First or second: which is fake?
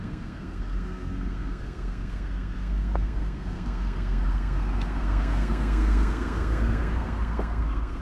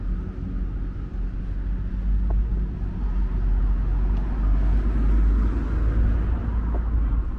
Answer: first